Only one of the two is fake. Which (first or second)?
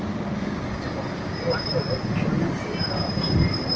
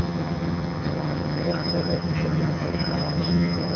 second